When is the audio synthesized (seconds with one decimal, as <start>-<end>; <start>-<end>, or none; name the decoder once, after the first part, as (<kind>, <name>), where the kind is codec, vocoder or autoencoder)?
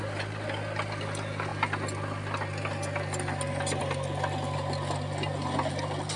none